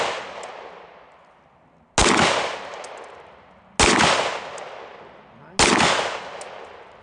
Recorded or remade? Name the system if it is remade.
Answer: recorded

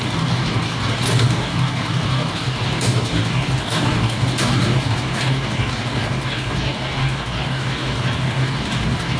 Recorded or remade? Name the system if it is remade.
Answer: remade, codec, DAC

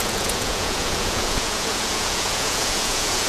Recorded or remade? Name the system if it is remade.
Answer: remade, vocoder, Vocos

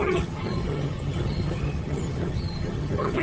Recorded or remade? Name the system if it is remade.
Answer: remade, vocoder, HiFi-GAN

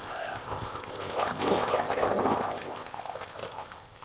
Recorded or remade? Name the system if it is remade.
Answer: remade, codec, ZipCodec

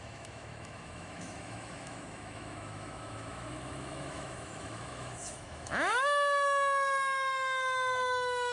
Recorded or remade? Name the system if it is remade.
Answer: remade, autoencoder, DAC-VAE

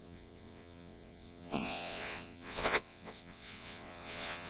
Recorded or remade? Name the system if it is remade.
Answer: remade, vocoder, WaveNeXt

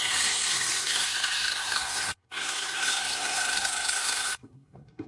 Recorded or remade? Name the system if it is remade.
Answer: remade, codec, SNAC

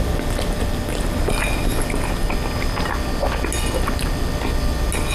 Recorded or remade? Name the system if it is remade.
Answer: recorded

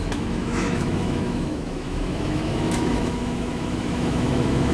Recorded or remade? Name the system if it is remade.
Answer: remade, autoencoder, DAC-VAE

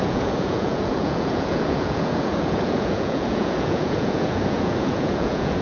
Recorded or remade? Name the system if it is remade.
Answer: remade, vocoder, Vocos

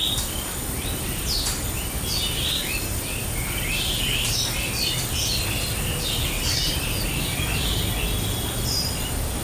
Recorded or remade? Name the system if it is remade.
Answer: remade, vocoder, BigVGAN v2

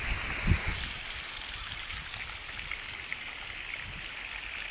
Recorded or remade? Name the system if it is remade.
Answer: recorded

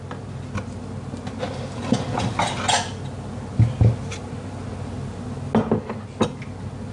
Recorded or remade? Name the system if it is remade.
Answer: recorded